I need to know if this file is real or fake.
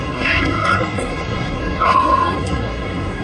fake